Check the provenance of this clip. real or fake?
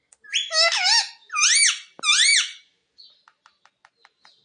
real